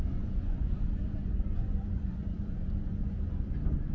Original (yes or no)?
no